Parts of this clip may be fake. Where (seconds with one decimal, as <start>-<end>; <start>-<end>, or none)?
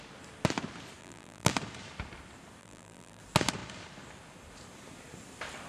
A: 1.0-1.5; 2.6-3.2